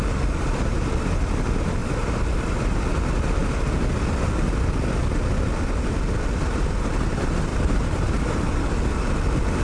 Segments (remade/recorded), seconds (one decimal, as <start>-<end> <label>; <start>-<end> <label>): 0.0-1.8 recorded; 1.8-2.8 remade; 2.8-7.5 recorded; 7.5-8.7 remade; 8.7-9.6 recorded